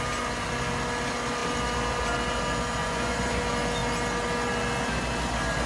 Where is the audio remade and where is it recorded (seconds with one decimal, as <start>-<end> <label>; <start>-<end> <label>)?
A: 0.0-2.8 recorded; 2.8-3.4 remade; 3.4-5.7 recorded

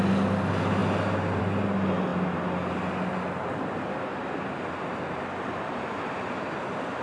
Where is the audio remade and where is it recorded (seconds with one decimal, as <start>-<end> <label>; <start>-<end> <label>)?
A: 0.0-7.0 recorded

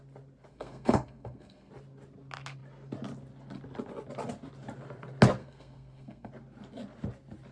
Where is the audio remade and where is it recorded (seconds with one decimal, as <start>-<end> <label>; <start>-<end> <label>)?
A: 0.0-0.5 recorded; 0.5-1.7 remade; 1.7-5.4 recorded; 5.4-6.3 remade; 6.3-7.5 recorded

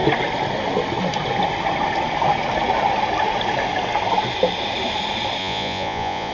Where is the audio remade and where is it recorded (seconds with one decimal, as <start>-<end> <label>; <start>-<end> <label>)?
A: 0.0-5.4 recorded; 5.4-6.3 remade

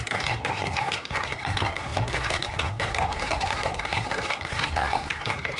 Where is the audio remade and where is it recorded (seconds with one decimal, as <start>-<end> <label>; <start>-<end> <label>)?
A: 0.0-5.6 remade